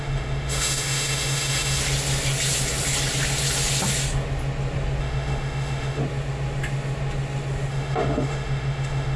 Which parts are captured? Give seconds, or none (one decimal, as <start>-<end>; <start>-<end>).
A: 1.8-5.0; 6.0-7.7

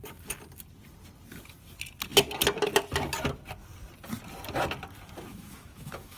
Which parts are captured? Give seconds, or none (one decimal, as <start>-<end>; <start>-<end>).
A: 0.0-5.3

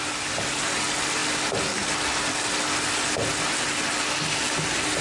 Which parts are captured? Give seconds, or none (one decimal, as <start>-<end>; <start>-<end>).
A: 0.0-5.0

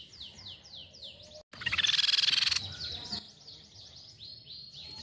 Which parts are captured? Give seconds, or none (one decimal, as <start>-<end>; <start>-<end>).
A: 0.0-5.0

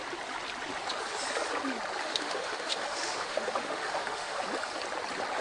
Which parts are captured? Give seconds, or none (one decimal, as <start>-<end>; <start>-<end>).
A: 0.0-2.0; 4.4-5.4

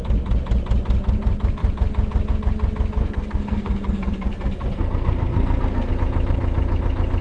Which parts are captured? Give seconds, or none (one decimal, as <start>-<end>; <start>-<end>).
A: 0.0-3.0; 5.9-7.2

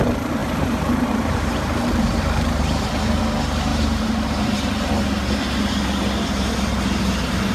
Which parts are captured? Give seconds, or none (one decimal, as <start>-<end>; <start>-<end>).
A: 0.0-0.4; 3.2-3.7; 4.9-7.5

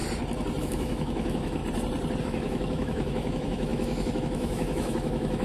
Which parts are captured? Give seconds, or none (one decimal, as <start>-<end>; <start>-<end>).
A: 0.0-0.6; 1.6-2.2